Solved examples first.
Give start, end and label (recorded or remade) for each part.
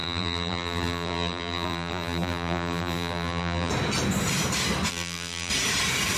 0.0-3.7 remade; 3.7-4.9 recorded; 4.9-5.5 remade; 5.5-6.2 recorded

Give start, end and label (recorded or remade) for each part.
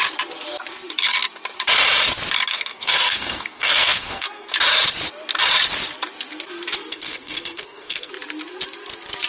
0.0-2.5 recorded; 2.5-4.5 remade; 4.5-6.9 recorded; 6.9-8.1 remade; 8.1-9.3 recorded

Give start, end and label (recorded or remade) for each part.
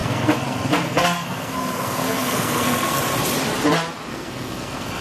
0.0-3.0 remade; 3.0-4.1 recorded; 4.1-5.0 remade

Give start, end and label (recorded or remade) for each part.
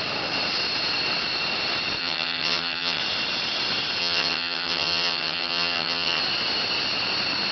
0.0-2.0 recorded; 2.0-3.0 remade; 3.0-4.0 recorded; 4.0-6.2 remade; 6.2-7.5 recorded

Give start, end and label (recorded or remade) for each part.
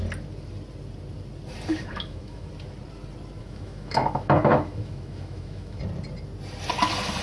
0.0-1.7 recorded; 1.7-2.5 remade; 2.5-3.4 recorded; 3.4-5.8 remade; 5.8-7.2 recorded